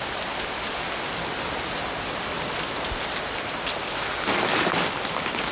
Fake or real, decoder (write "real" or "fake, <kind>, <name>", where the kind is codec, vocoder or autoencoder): real